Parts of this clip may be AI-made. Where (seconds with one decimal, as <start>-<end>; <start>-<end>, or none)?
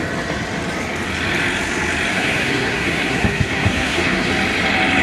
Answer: 2.1-4.3